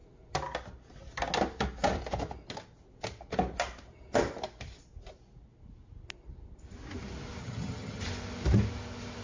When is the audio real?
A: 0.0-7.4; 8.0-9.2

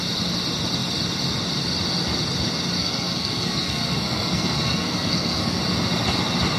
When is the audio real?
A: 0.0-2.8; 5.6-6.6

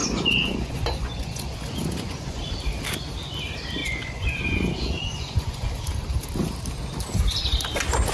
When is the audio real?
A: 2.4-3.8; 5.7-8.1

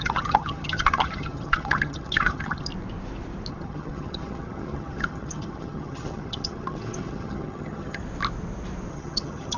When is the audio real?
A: 2.7-3.5; 8.0-8.9

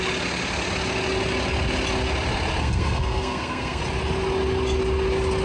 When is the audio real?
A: 0.0-2.6; 3.8-5.4

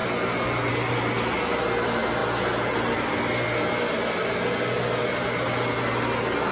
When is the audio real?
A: 0.0-6.5

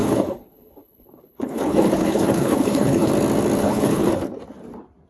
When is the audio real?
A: 3.1-3.6; 4.1-5.1